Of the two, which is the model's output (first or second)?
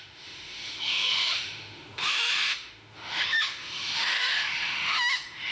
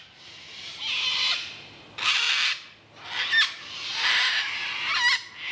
first